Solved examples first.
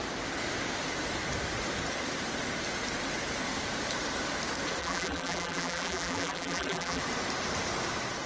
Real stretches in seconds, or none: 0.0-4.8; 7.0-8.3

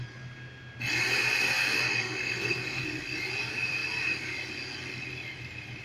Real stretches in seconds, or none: 0.0-2.0; 2.8-5.8

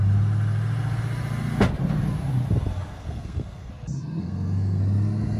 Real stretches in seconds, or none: 0.0-2.9; 3.7-4.2; 4.8-5.4

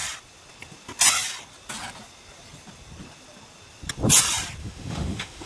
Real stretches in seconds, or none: 0.0-4.6